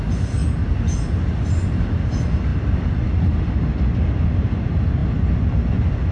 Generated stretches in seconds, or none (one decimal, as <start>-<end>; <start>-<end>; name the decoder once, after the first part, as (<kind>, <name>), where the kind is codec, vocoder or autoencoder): none